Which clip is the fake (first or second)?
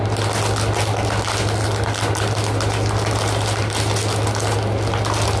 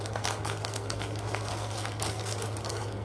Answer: second